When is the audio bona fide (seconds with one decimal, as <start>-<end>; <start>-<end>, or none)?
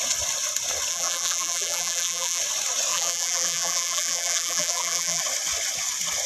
0.0-0.9; 2.4-2.9; 5.2-6.3